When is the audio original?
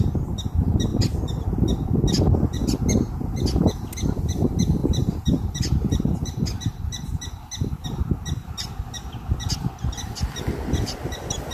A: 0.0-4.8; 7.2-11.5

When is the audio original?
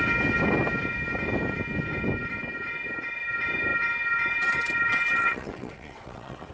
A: 0.0-5.1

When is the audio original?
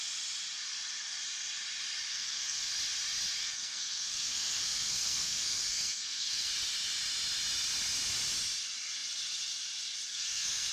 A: 0.0-2.1; 2.7-3.4; 6.5-10.1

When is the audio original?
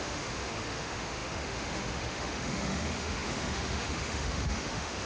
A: none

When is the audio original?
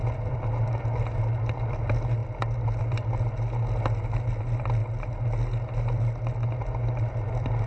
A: 0.0-7.7